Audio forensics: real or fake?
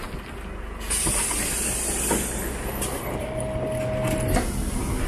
real